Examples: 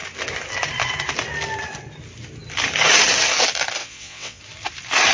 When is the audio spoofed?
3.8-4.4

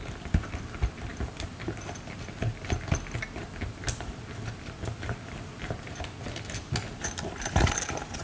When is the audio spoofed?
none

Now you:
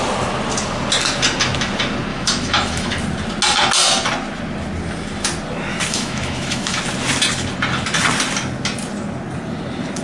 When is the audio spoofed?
2.1-2.9; 5.9-6.8

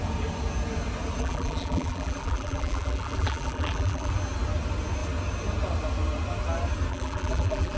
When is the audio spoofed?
1.2-4.1; 6.9-7.8